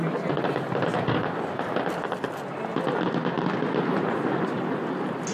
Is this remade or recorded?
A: recorded